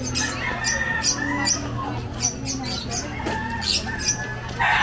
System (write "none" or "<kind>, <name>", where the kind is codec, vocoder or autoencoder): none